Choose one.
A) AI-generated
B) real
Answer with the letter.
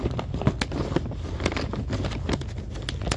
B